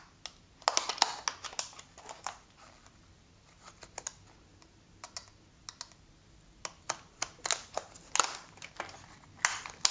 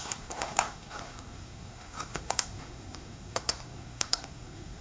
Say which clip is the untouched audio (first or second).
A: first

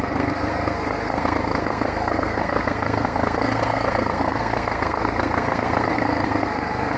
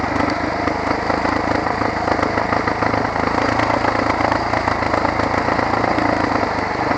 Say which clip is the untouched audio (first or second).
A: second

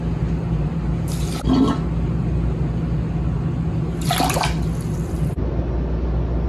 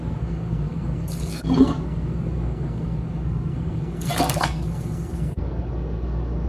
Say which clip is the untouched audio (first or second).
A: first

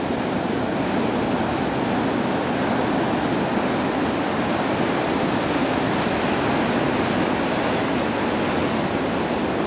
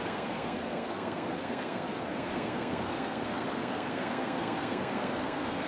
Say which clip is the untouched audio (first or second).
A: first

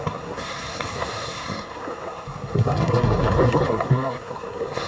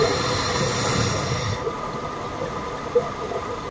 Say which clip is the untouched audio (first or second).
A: second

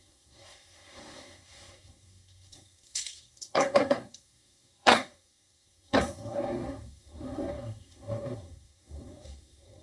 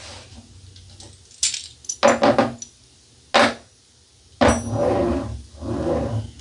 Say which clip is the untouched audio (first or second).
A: second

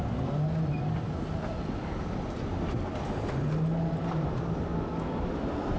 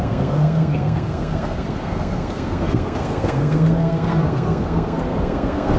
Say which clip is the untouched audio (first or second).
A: first